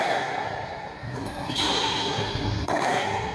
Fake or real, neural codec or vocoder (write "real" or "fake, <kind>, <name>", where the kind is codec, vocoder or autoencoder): fake, codec, SNAC